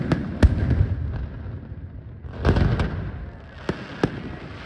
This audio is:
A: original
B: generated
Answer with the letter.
A